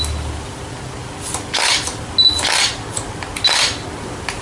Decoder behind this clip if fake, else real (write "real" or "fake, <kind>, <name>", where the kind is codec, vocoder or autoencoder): real